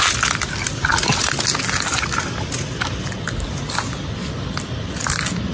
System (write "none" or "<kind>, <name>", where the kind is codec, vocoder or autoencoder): none